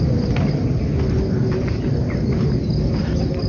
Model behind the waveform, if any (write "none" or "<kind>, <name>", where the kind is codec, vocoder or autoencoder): none